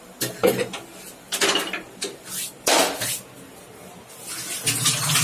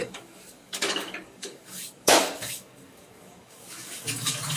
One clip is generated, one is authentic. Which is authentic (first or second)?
first